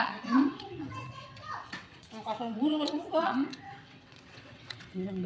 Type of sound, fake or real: fake